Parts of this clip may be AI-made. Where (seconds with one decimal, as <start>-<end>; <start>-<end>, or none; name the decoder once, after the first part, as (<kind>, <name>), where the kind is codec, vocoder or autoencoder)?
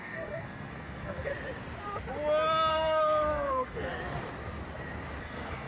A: 0.0-1.3 (codec, SNAC); 2.7-3.9; 5.2-5.7